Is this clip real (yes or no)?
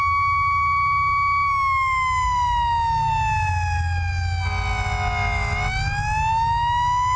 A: yes